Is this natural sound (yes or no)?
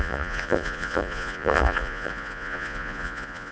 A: no